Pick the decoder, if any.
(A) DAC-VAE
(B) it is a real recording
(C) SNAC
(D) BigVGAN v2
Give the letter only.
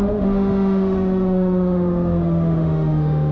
A